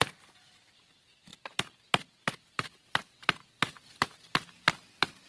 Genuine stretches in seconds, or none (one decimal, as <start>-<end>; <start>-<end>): 1.3-4.5